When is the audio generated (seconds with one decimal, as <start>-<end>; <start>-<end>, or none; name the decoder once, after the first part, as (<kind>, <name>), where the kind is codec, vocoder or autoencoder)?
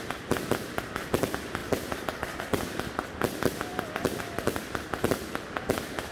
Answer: 1.6-2.4 (vocoder, BigVGAN v2); 3.7-4.2